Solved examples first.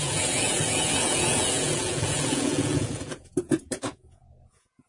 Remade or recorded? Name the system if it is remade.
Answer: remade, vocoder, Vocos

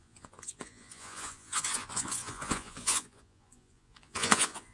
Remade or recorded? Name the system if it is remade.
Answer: remade, vocoder, Vocos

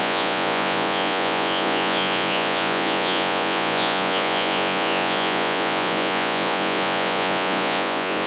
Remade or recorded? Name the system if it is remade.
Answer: remade, vocoder, Vocos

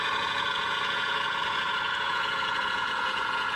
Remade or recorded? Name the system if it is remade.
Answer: remade, vocoder, Vocos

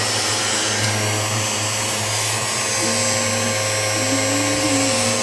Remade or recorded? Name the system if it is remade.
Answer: recorded